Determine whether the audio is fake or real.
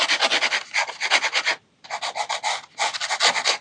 real